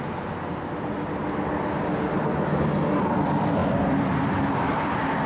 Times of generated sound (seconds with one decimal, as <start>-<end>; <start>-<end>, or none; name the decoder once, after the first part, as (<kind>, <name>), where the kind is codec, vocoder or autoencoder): none